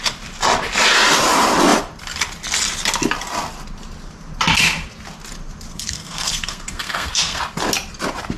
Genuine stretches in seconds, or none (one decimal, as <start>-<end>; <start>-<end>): 0.0-5.7; 7.4-8.4